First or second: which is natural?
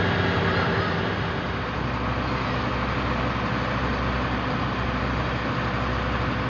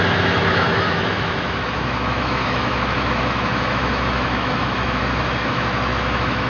first